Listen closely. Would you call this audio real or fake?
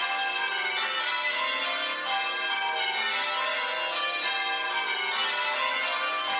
real